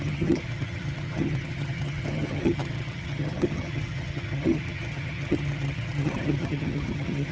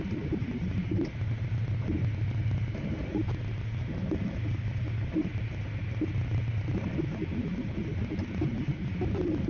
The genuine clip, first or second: second